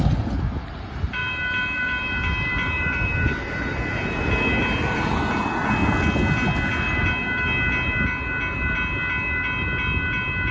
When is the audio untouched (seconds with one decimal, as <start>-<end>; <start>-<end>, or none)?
0.0-1.2; 4.5-10.5

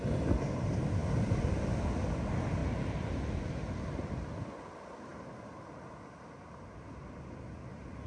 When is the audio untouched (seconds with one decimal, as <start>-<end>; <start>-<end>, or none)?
0.0-1.0; 1.8-2.6; 4.5-5.1; 5.7-8.1

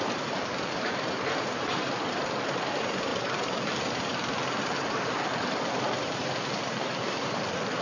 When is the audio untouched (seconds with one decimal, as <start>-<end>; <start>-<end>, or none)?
none